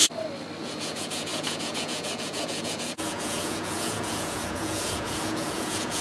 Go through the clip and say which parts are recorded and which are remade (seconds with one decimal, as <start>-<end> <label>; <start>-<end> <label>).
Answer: 0.0-0.6 recorded; 0.6-6.0 remade